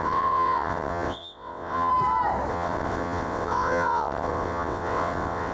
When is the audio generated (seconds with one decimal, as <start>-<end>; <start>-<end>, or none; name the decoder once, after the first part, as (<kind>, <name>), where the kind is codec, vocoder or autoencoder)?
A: 0.0-1.9 (vocoder, WaveNeXt); 2.5-5.5